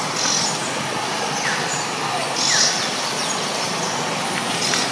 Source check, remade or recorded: recorded